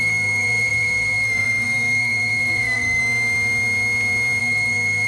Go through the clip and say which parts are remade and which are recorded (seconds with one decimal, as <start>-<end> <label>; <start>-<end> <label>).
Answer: 0.0-3.0 remade; 3.0-4.4 recorded; 4.4-5.1 remade